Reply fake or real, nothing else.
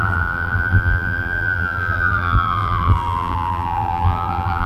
fake